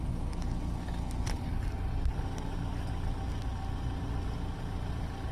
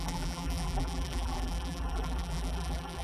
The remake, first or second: second